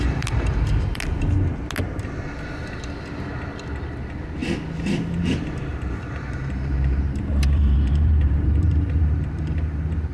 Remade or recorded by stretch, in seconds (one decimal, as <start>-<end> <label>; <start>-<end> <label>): 0.0-5.7 recorded; 5.7-10.1 remade